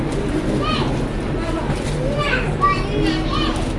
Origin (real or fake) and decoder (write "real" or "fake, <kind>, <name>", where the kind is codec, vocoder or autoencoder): real